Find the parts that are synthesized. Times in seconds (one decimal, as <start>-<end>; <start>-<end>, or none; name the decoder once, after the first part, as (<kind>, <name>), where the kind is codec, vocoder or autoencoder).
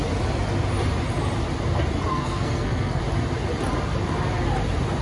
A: 2.1-3.0 (codec, SNAC)